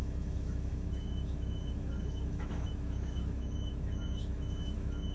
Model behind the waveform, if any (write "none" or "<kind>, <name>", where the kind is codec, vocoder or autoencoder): autoencoder, DAC-VAE